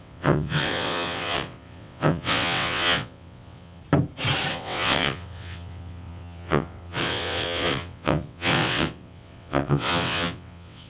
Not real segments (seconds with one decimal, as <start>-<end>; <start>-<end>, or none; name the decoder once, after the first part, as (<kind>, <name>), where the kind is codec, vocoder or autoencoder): 0.0-3.8 (vocoder, WaveNeXt); 4.5-10.9